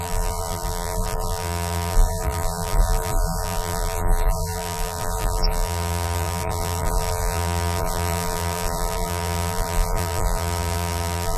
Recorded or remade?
remade